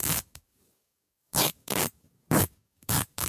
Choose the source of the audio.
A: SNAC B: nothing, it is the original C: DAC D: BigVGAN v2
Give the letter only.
C